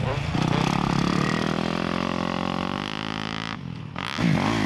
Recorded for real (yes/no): yes